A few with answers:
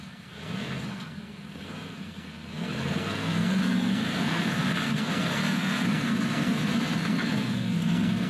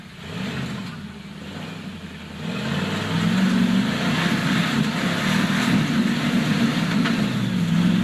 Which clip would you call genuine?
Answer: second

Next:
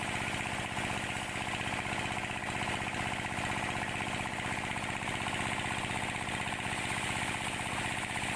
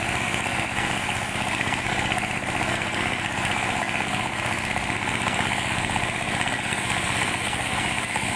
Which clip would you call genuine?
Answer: first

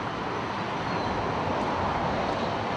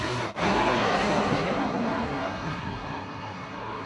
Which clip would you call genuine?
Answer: first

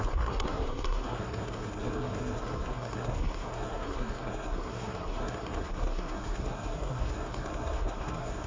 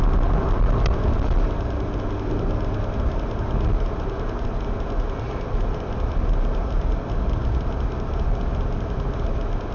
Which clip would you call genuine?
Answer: second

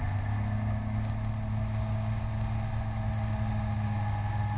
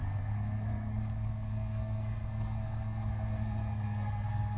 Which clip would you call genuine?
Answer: first